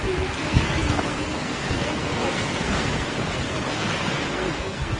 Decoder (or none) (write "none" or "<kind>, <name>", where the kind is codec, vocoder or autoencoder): codec, SNAC